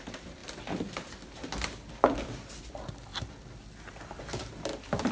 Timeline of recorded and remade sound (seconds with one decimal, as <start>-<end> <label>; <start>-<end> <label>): 0.0-5.1 recorded